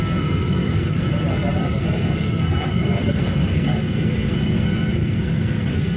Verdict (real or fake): fake